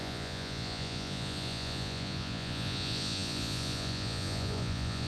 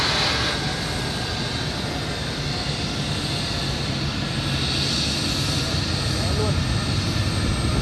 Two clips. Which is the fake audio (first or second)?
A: first